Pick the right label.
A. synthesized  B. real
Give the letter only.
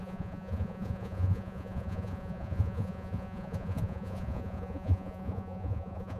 A